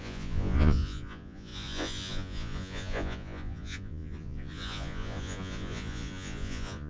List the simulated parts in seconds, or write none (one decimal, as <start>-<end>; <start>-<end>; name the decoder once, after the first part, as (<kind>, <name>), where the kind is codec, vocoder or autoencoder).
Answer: 0.0-6.9 (vocoder, Vocos)